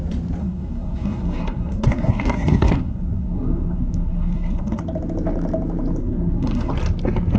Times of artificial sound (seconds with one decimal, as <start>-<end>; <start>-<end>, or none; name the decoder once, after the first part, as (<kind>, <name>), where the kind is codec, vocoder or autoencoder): 0.4-4.8 (codec, SNAC); 6.0-6.7